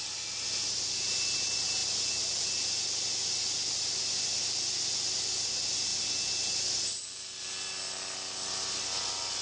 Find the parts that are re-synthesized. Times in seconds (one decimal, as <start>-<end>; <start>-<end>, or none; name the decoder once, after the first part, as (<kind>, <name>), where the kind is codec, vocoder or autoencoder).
none